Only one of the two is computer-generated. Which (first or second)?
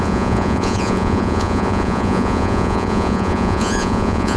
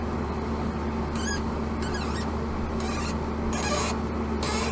first